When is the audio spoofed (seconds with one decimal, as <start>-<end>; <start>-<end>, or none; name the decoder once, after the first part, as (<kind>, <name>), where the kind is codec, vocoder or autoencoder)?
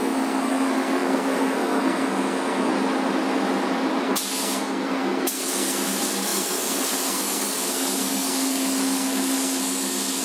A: 0.0-2.7 (codec, SNAC); 4.0-10.2